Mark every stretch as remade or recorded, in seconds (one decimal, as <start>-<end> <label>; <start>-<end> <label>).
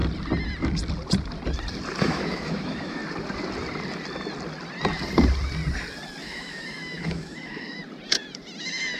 0.0-2.0 recorded; 2.0-3.0 remade; 3.0-6.2 recorded; 6.2-7.8 remade; 7.8-8.6 recorded; 8.6-9.0 remade